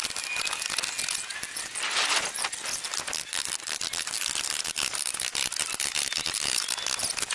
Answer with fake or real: real